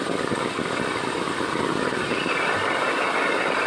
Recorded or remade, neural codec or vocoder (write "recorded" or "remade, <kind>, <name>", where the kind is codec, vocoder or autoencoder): recorded